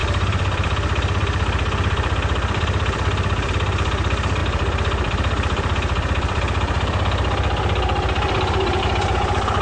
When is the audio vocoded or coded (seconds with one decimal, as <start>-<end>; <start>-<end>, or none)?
0.0-3.5; 4.4-8.8